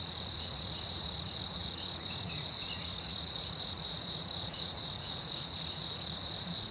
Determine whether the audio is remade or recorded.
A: remade